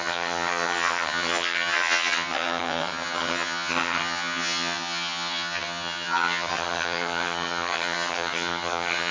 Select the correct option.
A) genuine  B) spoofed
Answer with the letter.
B